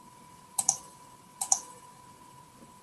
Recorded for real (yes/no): yes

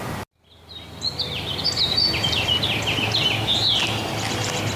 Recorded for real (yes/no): yes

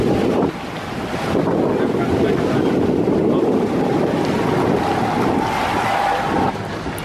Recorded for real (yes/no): yes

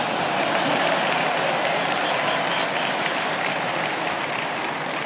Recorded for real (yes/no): yes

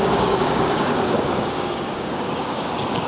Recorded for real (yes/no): no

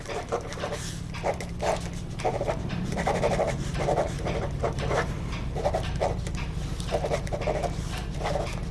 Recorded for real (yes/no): no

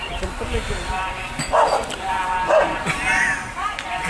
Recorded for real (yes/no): yes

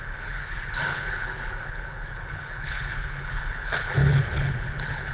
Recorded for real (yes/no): no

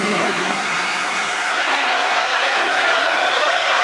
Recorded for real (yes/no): no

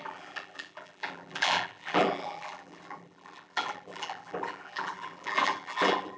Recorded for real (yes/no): no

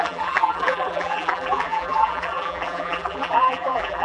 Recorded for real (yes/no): no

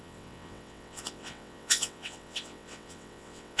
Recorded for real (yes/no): no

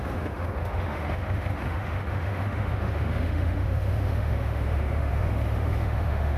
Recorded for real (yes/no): no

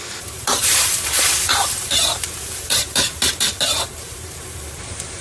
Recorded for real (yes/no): no